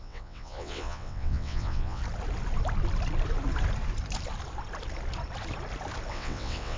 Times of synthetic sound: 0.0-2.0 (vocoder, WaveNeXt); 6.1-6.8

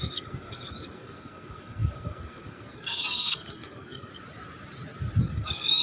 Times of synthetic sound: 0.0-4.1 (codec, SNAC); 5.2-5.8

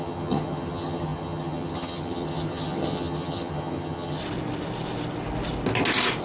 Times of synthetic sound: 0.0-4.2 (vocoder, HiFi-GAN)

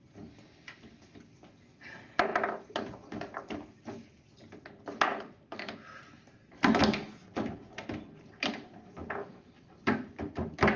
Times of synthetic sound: none

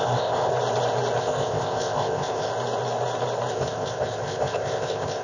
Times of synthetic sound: 0.0-0.5 (codec, ZipCodec); 1.2-2.5; 3.5-5.2

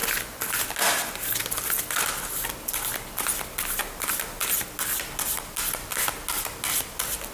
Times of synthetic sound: none

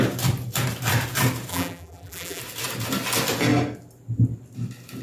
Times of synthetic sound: 1.5-2.4 (vocoder, BigVGAN v2)

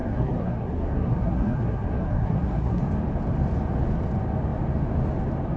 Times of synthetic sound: 0.0-2.8 (codec, SNAC)